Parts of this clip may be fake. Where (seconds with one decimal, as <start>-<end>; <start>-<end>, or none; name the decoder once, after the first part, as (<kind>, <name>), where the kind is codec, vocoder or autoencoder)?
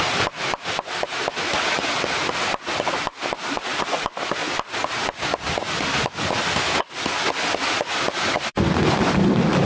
none